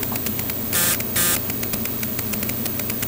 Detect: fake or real real